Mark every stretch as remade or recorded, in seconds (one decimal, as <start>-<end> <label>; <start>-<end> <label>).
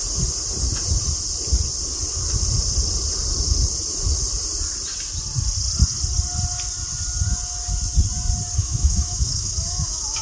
0.0-8.6 recorded; 8.6-10.2 remade